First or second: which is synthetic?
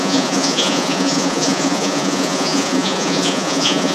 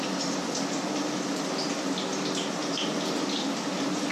first